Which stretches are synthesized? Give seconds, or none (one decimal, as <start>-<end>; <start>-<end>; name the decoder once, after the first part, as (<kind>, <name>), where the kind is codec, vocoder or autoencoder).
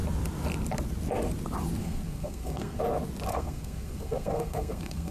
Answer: 1.8-2.8 (codec, SNAC); 3.3-5.1